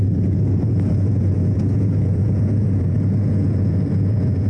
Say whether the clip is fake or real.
fake